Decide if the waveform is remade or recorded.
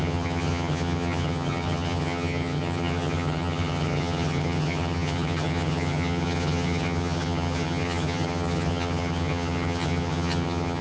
remade